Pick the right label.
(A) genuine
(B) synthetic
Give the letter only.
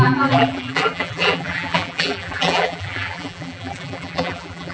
B